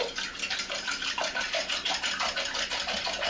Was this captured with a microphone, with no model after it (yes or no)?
yes